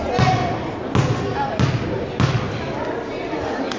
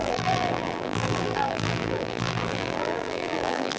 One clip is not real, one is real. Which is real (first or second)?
first